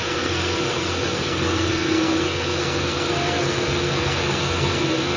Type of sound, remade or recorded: remade